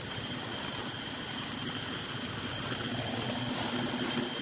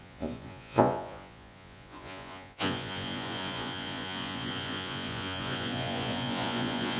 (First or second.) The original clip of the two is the first